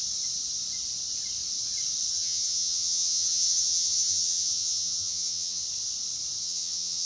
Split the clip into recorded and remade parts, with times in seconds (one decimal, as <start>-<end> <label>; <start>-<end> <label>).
0.0-2.1 recorded; 2.1-5.6 remade; 5.6-6.4 recorded; 6.4-7.1 remade